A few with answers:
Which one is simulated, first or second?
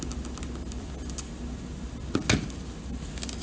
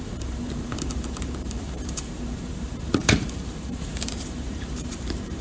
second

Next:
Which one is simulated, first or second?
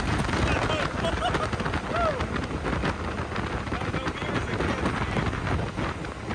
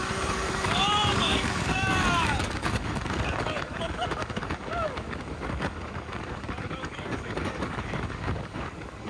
second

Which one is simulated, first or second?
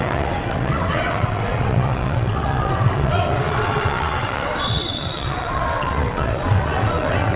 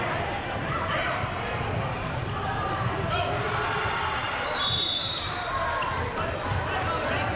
first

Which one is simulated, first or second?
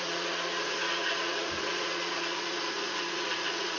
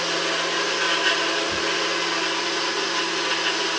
first